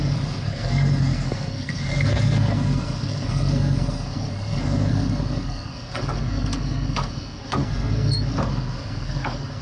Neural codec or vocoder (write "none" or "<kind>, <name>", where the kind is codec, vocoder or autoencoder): codec, SNAC